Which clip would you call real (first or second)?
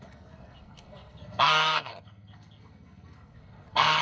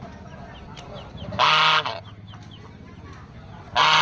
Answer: second